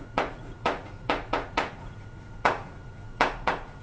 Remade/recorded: remade